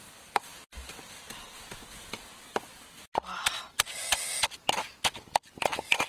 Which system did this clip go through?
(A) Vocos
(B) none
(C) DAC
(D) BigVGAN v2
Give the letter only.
B